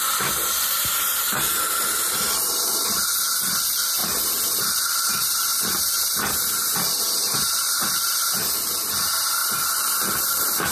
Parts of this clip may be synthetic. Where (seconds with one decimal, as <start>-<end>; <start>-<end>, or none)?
5.5-7.1